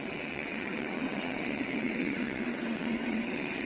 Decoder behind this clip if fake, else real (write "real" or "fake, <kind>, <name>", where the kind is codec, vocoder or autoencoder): fake, vocoder, WaveNeXt